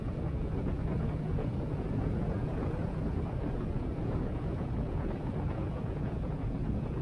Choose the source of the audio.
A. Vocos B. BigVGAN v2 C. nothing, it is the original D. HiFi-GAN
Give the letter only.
A